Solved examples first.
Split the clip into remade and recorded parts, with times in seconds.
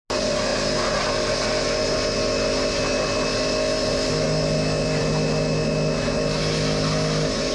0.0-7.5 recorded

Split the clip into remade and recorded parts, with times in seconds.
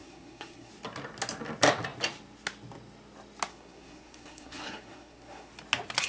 0.0-0.7 remade; 0.7-3.5 recorded; 3.5-5.5 remade; 5.5-6.1 recorded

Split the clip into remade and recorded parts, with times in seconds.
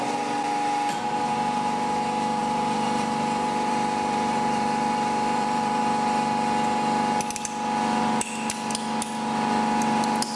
0.0-2.4 recorded; 2.4-5.8 remade; 5.8-10.4 recorded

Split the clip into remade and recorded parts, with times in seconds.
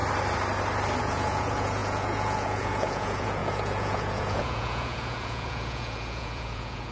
0.0-1.0 recorded; 1.0-6.9 remade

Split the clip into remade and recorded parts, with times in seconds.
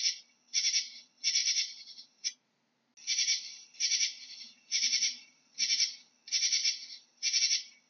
0.0-1.4 recorded; 1.4-2.6 remade; 2.6-3.3 recorded; 3.3-5.9 remade; 5.9-6.6 recorded; 6.6-7.4 remade; 7.4-7.9 recorded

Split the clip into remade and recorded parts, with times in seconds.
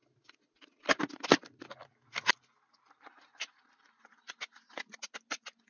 0.0-5.7 recorded